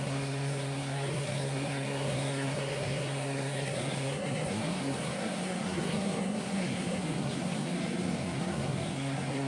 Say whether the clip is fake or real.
fake